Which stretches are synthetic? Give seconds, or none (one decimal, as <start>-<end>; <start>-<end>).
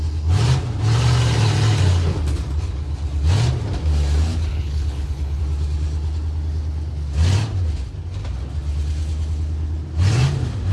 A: 4.5-5.4